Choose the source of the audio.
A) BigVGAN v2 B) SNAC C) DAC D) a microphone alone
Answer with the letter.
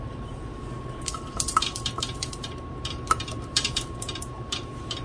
A